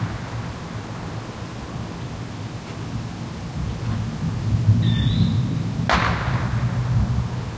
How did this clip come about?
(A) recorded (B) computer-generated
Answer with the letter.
A